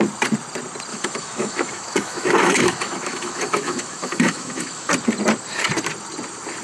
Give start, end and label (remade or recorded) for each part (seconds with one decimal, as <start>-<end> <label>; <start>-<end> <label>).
0.0-0.9 recorded; 0.9-4.9 remade; 4.9-6.6 recorded